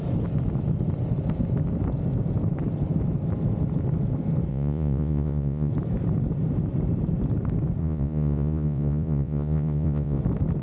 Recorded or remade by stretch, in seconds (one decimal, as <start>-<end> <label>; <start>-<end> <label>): 0.0-4.5 recorded; 4.5-5.7 remade; 5.7-7.8 recorded; 7.8-10.2 remade; 10.2-10.6 recorded